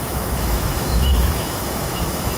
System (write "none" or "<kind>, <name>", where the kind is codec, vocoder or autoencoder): autoencoder, DAC-VAE